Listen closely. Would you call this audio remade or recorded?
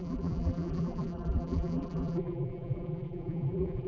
remade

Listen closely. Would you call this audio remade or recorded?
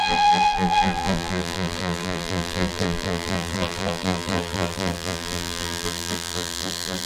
remade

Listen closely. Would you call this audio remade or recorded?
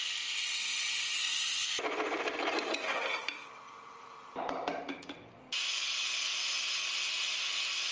recorded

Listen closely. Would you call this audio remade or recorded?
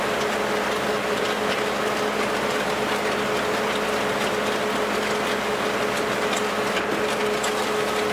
recorded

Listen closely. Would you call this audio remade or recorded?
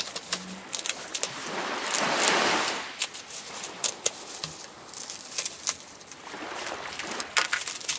recorded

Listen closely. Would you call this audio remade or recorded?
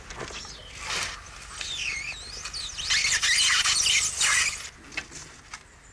recorded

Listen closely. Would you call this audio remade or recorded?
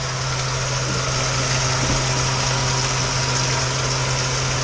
recorded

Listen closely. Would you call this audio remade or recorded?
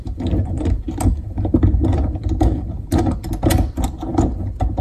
recorded